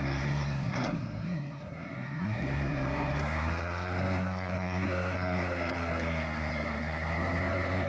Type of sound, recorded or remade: remade